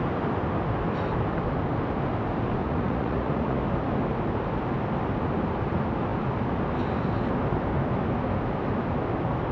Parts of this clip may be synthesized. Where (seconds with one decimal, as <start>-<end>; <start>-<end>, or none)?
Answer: 2.6-3.6